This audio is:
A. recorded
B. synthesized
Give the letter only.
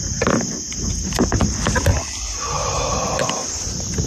A